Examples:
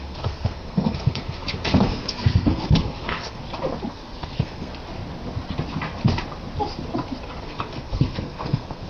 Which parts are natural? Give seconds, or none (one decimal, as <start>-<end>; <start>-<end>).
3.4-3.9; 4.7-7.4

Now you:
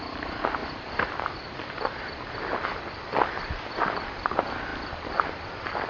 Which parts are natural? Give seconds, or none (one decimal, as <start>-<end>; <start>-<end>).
0.0-0.6; 4.1-4.7

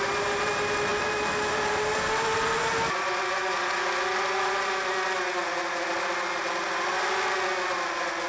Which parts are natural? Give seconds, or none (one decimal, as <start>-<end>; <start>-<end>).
0.0-8.3